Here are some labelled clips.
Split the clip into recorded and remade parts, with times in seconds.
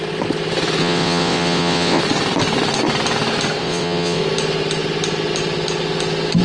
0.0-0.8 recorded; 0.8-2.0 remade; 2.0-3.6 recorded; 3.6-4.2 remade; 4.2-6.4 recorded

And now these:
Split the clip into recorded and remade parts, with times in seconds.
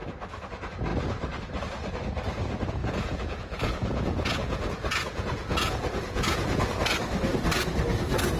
0.0-2.8 recorded; 2.8-6.8 remade; 6.8-8.4 recorded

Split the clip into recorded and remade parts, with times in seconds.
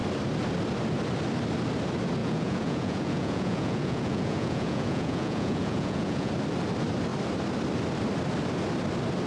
0.0-2.2 recorded; 2.2-6.3 remade; 6.3-9.3 recorded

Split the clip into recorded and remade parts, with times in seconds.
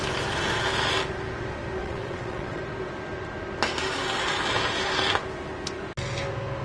0.0-1.8 recorded; 1.8-2.6 remade; 2.6-6.6 recorded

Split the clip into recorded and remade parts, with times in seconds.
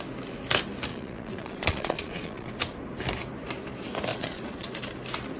0.0-0.9 recorded; 0.9-2.5 remade; 2.5-4.1 recorded; 4.1-4.8 remade; 4.8-5.4 recorded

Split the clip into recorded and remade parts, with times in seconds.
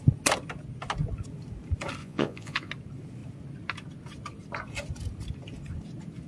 0.0-2.0 recorded; 2.0-2.7 remade; 2.7-6.3 recorded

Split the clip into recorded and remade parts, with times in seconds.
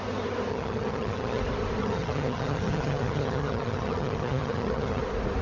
0.0-0.5 recorded; 0.5-1.4 remade; 1.4-1.8 recorded; 1.8-5.0 remade; 5.0-5.4 recorded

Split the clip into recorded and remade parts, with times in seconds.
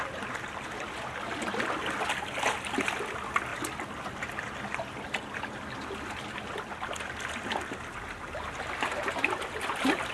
0.0-10.1 recorded